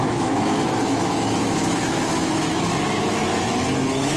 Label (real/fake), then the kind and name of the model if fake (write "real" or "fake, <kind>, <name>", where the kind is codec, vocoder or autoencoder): fake, autoencoder, DAC-VAE